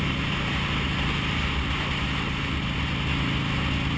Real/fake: real